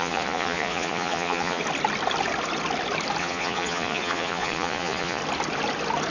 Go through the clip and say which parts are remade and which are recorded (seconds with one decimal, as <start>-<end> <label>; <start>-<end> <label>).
0.0-1.6 remade; 1.6-3.2 recorded; 3.2-5.2 remade; 5.2-6.1 recorded